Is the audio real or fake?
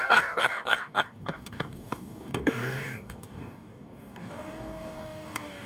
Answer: fake